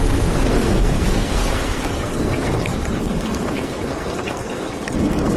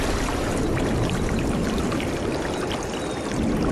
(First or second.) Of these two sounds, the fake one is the first